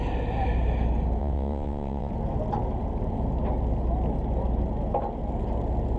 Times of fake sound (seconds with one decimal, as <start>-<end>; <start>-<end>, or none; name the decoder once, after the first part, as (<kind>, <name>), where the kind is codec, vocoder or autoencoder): 1.2-2.1 (vocoder, WaveNeXt)